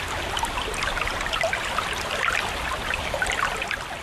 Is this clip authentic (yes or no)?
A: yes